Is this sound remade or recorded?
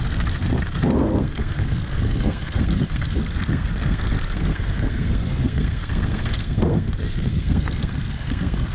remade